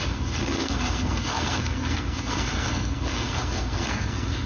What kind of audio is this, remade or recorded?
remade